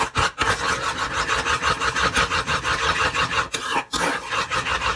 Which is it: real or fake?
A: real